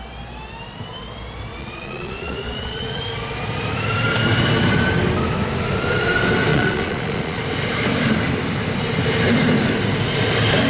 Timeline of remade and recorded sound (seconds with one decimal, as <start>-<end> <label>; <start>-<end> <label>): 0.0-1.5 recorded; 1.5-3.0 remade; 3.0-6.5 recorded; 6.5-7.4 remade; 7.4-10.7 recorded